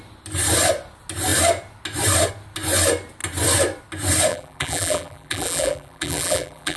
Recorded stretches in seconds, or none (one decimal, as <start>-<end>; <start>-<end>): 0.0-4.3

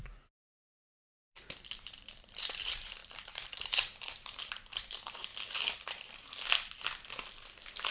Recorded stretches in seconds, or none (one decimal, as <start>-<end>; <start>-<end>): 5.3-7.5

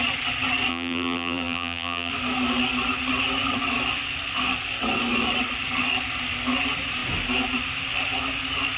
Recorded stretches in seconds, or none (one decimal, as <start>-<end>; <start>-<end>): 0.0-0.7; 2.1-8.8

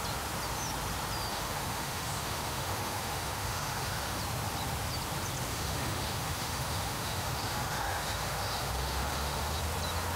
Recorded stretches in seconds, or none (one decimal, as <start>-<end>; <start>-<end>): 0.0-1.3; 4.2-5.5; 9.6-10.2

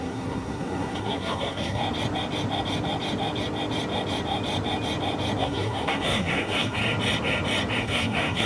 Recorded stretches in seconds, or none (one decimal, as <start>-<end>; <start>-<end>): 1.8-5.4; 6.8-7.8

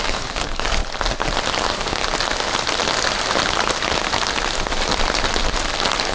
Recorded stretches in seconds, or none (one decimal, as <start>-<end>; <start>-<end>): 0.8-1.6; 2.0-6.1

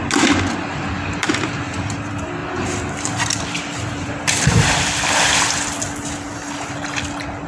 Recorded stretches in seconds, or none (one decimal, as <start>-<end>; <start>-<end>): 0.0-0.7; 1.6-2.4; 5.4-7.5